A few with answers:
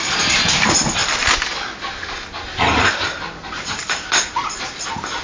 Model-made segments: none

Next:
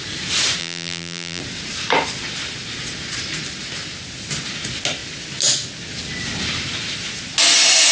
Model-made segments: 0.6-1.4

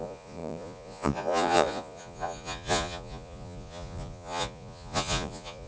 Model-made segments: 0.0-5.7

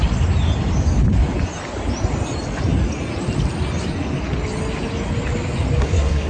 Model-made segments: 5.8-6.3

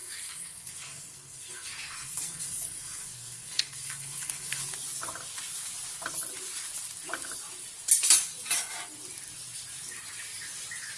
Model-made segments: 0.0-4.6

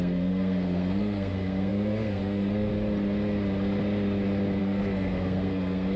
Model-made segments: 0.0-2.7; 4.6-6.0

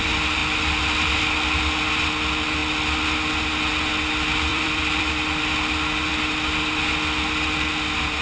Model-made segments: 4.5-5.1

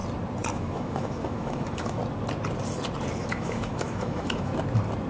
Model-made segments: 0.5-2.0; 3.2-4.5